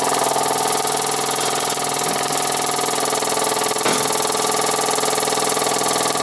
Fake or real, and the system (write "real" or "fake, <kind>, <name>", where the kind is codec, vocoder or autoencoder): real